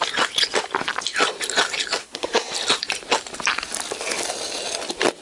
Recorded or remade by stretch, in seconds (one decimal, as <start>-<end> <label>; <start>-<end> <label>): 0.0-2.0 recorded; 2.0-2.5 remade; 2.5-5.2 recorded